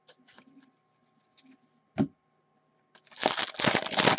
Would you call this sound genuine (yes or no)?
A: yes